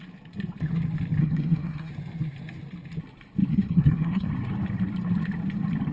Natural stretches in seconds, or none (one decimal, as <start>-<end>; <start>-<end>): 0.0-1.2; 1.9-3.5; 4.3-5.9